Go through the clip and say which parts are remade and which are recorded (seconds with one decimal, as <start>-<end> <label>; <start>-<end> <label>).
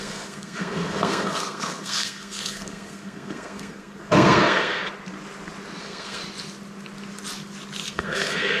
0.0-4.8 remade; 4.8-5.8 recorded; 5.8-6.2 remade; 6.2-7.9 recorded; 7.9-8.6 remade